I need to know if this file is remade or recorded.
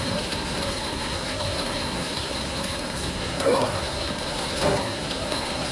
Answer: remade